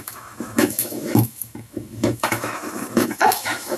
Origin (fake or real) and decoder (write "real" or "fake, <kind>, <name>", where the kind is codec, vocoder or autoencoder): fake, autoencoder, DAC-VAE